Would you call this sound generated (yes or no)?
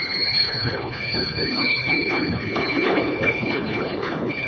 yes